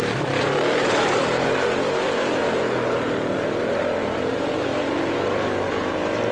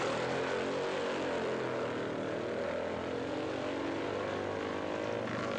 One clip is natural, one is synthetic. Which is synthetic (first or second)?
first